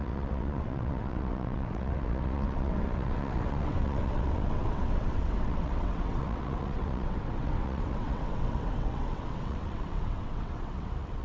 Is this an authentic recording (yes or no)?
no